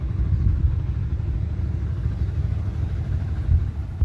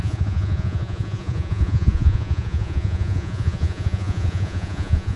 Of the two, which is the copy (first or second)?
second